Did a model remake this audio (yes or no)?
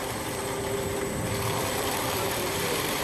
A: yes